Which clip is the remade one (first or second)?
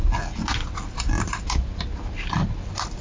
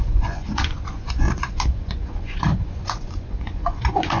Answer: second